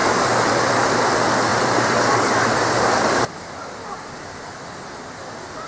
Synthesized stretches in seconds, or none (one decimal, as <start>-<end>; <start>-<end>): 1.5-4.9